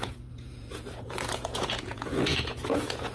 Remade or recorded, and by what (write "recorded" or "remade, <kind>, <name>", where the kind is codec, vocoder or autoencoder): remade, vocoder, Vocos